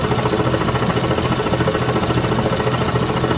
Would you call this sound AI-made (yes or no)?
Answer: no